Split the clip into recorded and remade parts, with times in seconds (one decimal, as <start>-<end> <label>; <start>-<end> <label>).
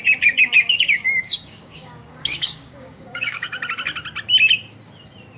0.0-3.6 remade; 3.6-5.4 recorded